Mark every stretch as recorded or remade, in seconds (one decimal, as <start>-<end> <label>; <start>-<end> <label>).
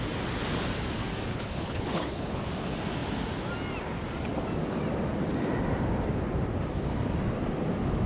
0.0-1.3 recorded; 1.3-2.4 remade; 2.4-8.1 recorded